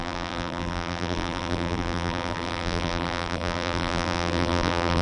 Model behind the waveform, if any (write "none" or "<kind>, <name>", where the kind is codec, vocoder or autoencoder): vocoder, BigVGAN v2